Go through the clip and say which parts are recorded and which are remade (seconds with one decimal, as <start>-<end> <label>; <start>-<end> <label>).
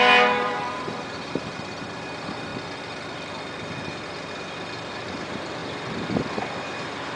0.0-2.5 remade; 2.5-4.9 recorded; 4.9-5.6 remade; 5.6-6.3 recorded; 6.3-7.2 remade